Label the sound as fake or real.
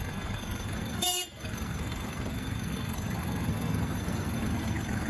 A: fake